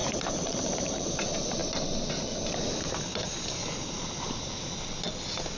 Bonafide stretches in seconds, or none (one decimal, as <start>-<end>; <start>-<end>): 1.2-5.6